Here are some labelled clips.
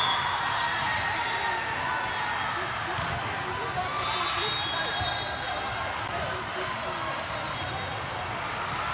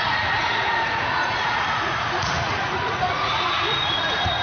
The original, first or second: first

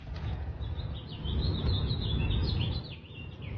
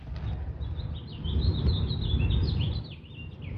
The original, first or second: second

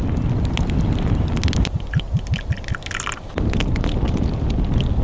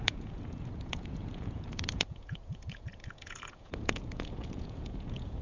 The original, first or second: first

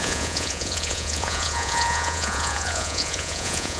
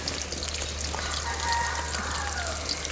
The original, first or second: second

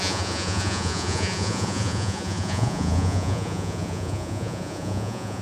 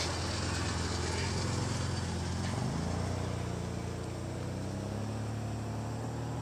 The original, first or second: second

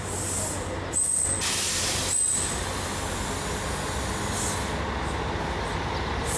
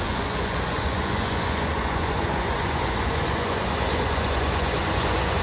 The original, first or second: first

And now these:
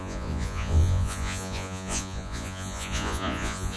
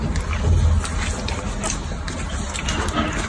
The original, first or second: second